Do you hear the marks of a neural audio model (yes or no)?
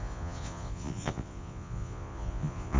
yes